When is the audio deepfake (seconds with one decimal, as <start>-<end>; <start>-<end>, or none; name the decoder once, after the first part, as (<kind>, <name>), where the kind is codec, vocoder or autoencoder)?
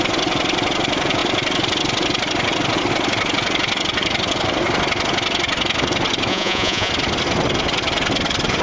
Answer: 6.3-6.9 (vocoder, Vocos)